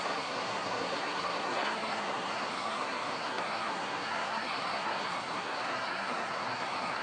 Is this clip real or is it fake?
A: fake